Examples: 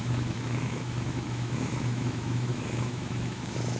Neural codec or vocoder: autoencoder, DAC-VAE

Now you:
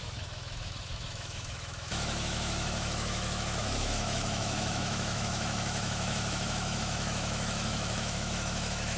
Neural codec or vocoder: autoencoder, DAC-VAE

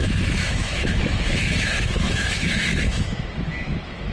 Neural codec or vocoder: autoencoder, DAC-VAE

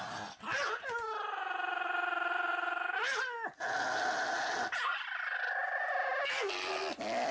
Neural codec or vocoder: none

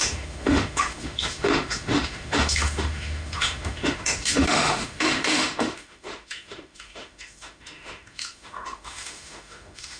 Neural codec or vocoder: autoencoder, DAC-VAE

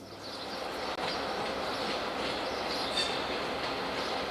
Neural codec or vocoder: none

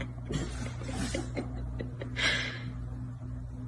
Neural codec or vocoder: none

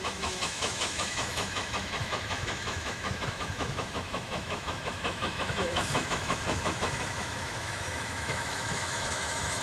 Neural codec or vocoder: autoencoder, DAC-VAE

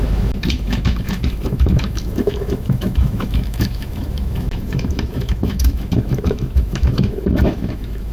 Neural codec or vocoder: autoencoder, DAC-VAE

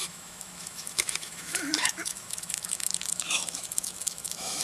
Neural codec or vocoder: autoencoder, DAC-VAE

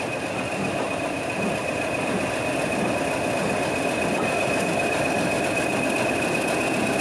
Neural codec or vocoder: none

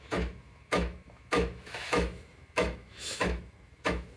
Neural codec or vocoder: autoencoder, DAC-VAE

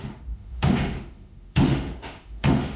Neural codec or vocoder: autoencoder, DAC-VAE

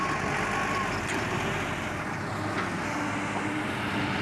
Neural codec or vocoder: none